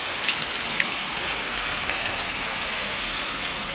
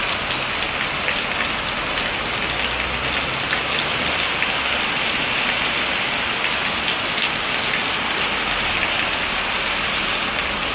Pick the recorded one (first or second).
second